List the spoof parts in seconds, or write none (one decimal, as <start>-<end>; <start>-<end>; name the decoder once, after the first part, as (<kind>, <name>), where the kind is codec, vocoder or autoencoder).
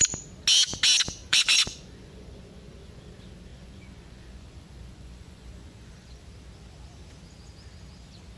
1.2-3.0 (vocoder, Vocos); 3.5-6.2